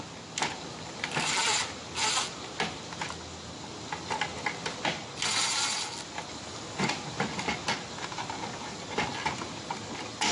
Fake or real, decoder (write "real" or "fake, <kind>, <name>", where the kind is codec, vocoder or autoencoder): real